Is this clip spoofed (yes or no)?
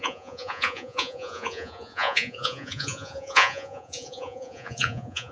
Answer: yes